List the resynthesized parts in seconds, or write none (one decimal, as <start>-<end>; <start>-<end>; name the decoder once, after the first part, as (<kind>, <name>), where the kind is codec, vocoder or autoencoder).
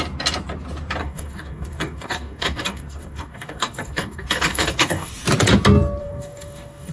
1.0-5.1 (codec, DAC); 6.0-6.9